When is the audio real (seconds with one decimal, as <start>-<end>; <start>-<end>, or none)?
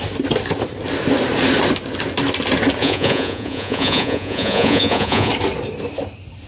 0.0-2.8; 5.3-6.5